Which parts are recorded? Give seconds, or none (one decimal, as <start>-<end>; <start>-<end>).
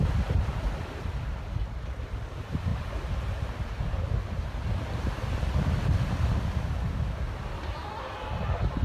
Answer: 0.0-8.8